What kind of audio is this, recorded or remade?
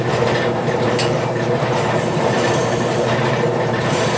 remade